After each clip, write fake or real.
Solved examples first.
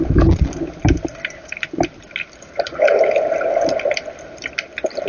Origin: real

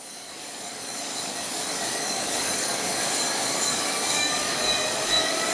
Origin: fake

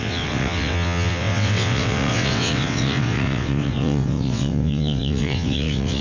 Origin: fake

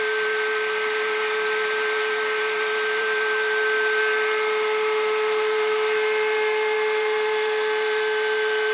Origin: fake